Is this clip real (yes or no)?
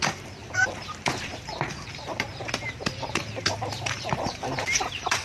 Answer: no